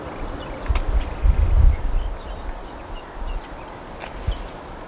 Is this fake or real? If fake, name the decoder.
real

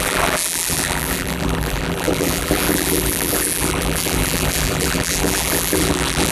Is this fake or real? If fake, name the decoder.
fake, vocoder, BigVGAN v2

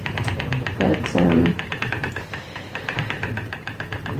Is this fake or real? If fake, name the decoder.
fake, vocoder, BigVGAN v2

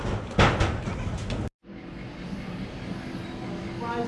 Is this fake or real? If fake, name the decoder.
real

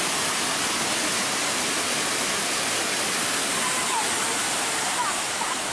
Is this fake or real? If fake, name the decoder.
real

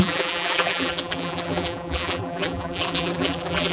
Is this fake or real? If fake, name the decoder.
fake, vocoder, BigVGAN v2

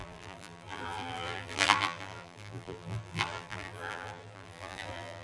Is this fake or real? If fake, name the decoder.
fake, vocoder, BigVGAN v2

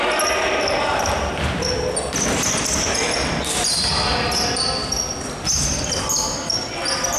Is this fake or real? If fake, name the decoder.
real